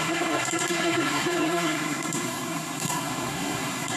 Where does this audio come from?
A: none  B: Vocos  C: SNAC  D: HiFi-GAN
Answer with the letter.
C